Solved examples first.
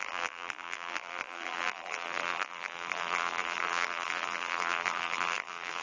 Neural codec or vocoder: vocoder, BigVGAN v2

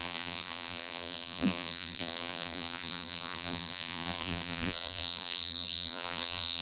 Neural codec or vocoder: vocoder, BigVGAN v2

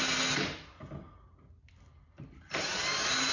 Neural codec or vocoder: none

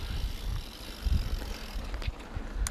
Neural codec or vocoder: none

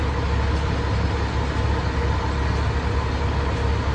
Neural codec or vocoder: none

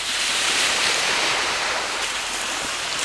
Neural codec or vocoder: vocoder, BigVGAN v2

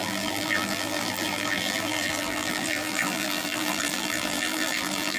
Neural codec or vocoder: vocoder, BigVGAN v2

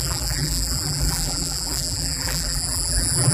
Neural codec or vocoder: vocoder, BigVGAN v2